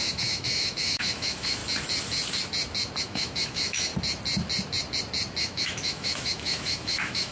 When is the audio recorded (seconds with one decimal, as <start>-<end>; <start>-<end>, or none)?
1.6-3.0; 3.9-5.4